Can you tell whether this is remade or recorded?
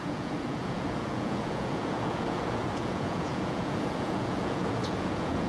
remade